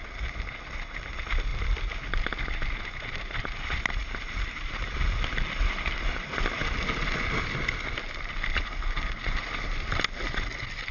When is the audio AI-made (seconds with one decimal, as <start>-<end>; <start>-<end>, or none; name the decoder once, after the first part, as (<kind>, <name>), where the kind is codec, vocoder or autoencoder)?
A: 1.5-2.2 (vocoder, BigVGAN v2); 4.0-6.8